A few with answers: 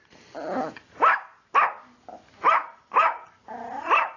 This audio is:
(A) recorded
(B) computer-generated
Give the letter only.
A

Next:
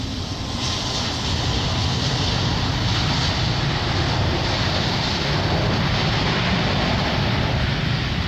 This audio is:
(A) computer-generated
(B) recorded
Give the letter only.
B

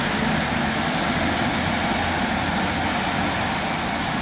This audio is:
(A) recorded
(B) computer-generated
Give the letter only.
A